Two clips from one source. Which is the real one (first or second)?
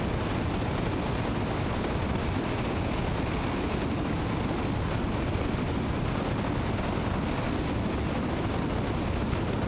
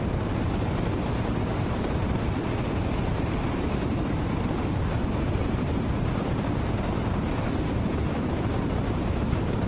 first